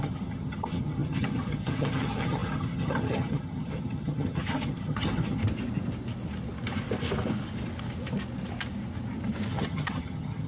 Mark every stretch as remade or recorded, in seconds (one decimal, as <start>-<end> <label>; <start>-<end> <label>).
0.0-5.4 remade; 5.4-9.5 recorded; 9.5-10.5 remade